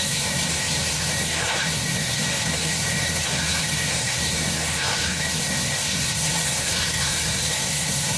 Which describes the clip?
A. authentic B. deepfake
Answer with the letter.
B